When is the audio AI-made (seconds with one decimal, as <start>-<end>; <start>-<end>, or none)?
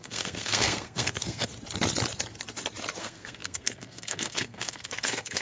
0.0-1.5; 3.0-5.4